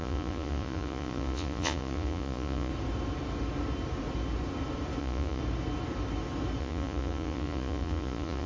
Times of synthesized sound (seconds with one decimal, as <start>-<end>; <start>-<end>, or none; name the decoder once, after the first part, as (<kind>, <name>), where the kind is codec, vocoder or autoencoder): 0.0-2.7 (vocoder, Vocos); 5.0-5.4; 6.6-8.5